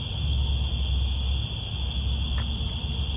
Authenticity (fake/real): real